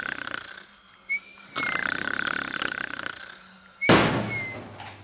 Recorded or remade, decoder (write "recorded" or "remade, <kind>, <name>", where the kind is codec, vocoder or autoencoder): recorded